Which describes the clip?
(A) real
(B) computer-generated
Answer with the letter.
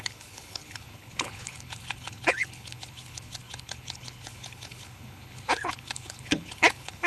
B